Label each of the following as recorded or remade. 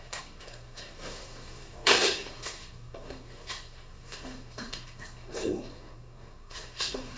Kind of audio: remade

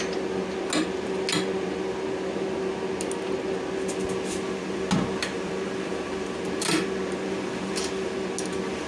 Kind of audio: recorded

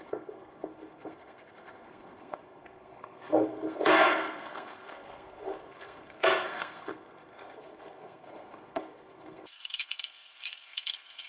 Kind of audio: remade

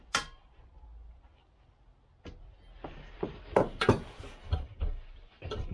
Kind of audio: recorded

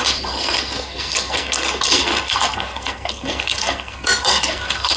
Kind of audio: remade